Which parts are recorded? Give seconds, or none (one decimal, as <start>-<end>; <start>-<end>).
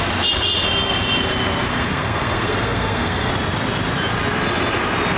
0.0-1.7; 3.3-5.2